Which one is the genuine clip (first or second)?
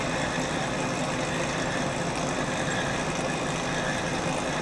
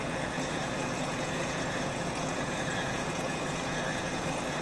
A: first